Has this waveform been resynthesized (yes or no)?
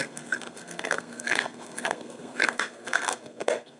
yes